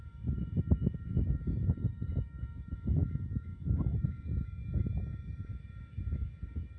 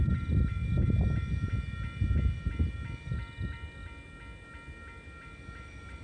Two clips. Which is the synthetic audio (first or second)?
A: first